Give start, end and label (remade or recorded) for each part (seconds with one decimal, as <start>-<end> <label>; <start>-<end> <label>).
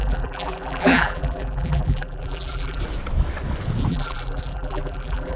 0.0-2.8 remade; 2.8-3.9 recorded; 3.9-5.4 remade